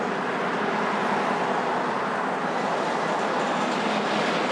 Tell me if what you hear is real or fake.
real